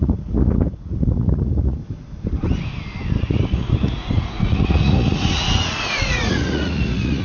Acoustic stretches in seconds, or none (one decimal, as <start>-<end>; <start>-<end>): 1.8-3.2